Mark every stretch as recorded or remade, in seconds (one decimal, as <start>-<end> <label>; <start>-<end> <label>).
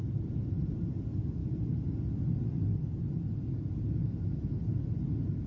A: 0.0-5.5 recorded